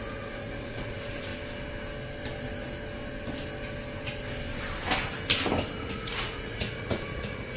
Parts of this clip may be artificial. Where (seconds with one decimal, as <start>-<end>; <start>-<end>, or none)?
0.0-1.3; 5.8-7.6